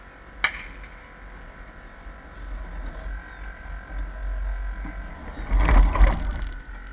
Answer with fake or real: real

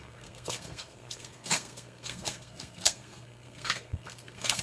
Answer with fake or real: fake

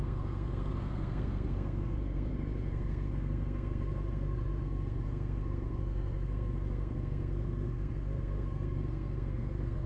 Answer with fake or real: fake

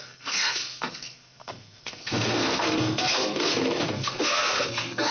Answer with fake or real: fake